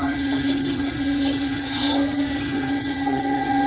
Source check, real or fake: fake